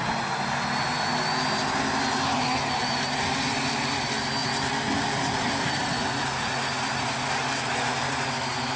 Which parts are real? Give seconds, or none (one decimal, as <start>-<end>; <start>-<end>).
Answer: 0.0-8.8